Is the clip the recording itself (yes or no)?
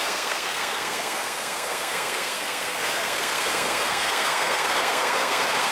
no